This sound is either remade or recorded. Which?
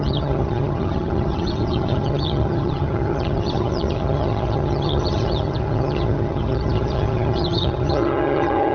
remade